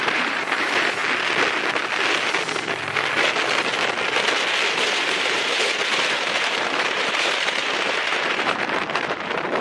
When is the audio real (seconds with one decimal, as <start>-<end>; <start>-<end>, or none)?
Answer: 1.0-4.7